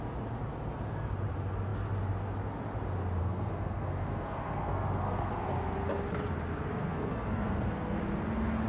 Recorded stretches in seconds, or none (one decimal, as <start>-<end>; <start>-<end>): 0.0-3.2; 5.3-6.7; 8.0-8.7